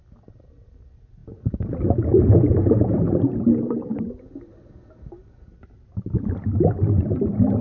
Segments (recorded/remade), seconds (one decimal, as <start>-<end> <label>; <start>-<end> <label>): 0.0-7.6 recorded